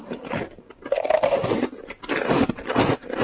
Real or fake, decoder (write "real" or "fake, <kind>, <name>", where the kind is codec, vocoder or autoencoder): real